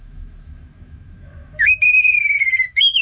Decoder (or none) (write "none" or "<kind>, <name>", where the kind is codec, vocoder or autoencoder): autoencoder, DAC-VAE